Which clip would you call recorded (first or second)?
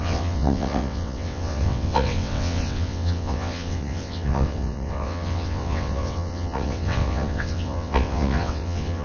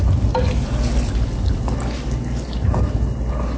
second